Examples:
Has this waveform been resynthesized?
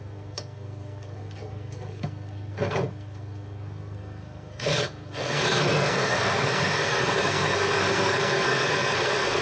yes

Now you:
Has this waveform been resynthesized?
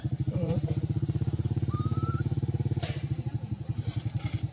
yes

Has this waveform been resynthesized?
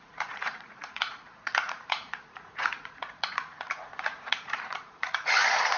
yes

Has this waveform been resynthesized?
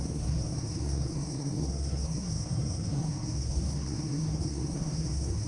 yes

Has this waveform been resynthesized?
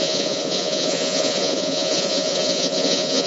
yes